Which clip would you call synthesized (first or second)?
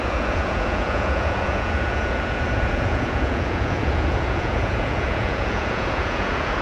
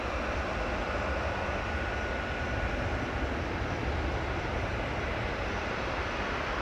first